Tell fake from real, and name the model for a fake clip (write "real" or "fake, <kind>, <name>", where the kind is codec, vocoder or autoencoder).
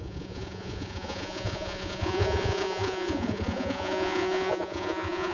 fake, vocoder, Vocos